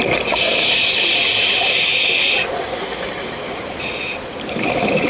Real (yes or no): yes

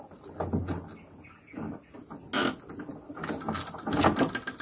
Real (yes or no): yes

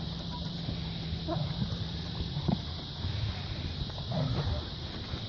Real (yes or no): no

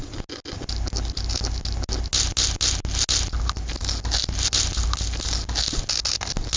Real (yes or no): yes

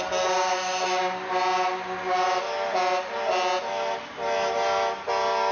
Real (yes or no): yes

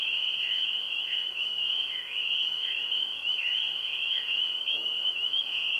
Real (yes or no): no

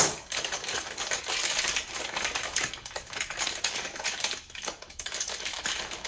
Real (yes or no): no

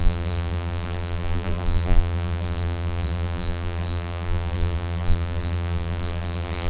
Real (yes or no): no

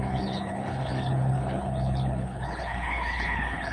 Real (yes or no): no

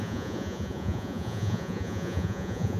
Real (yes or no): no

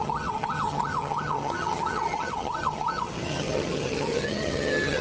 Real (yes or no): no